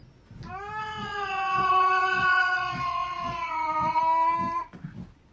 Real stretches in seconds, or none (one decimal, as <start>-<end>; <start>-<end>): 0.0-0.8; 4.0-5.3